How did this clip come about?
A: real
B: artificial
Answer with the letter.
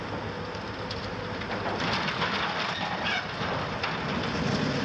A